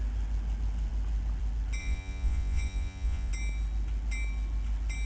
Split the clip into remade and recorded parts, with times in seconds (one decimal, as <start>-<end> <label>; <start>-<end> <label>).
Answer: 0.0-1.8 recorded; 1.8-3.3 remade; 3.3-5.1 recorded